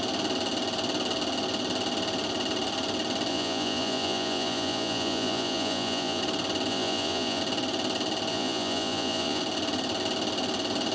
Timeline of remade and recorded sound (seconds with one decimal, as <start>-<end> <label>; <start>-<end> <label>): 0.0-3.3 recorded; 3.3-6.2 remade; 6.2-6.7 recorded; 6.7-7.4 remade; 7.4-8.3 recorded; 8.3-9.4 remade; 9.4-10.9 recorded